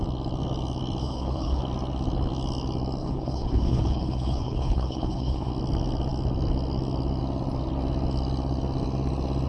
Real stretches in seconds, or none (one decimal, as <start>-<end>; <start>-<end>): 0.0-1.0; 1.6-3.0; 5.5-9.5